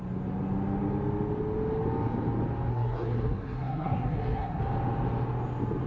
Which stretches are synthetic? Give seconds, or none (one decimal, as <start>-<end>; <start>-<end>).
2.7-4.6